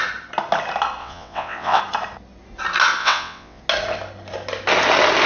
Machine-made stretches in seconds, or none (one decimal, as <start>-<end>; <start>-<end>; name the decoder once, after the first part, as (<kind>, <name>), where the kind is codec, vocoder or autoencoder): 1.0-1.8 (vocoder, WaveNeXt); 3.0-3.6